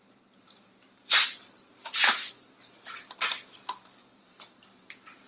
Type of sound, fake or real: fake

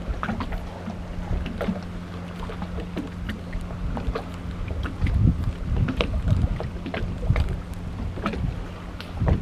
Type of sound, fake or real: real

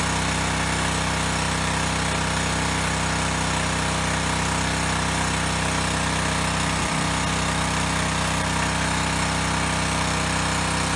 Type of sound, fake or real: real